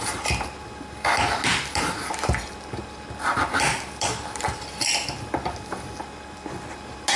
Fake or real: real